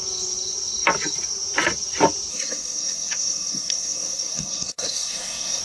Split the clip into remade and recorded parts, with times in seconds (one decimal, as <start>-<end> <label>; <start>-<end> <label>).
0.0-2.3 recorded; 2.3-5.6 remade